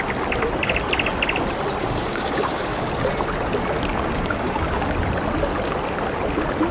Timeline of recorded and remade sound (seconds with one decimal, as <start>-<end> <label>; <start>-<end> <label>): 0.0-1.8 recorded; 1.8-2.9 remade; 2.9-3.9 recorded; 3.9-4.9 remade; 4.9-6.7 recorded